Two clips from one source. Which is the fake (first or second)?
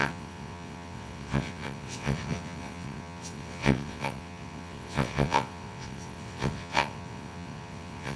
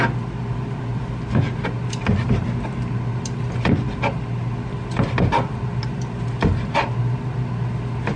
first